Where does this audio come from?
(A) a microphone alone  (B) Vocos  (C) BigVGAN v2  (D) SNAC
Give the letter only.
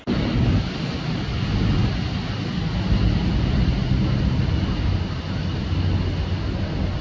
A